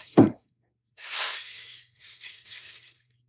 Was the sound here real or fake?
fake